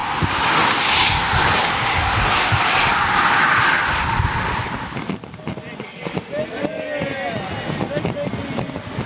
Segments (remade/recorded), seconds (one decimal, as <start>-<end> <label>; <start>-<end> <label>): 0.0-9.1 recorded